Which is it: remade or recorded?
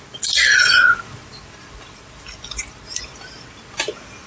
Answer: recorded